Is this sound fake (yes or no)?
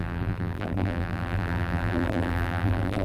yes